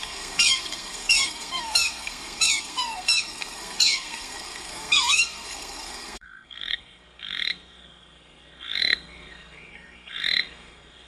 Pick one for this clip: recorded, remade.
remade